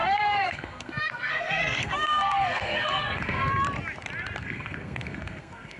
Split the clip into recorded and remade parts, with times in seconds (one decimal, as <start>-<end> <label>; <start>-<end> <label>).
0.0-3.5 remade; 3.5-4.4 recorded; 4.4-5.8 remade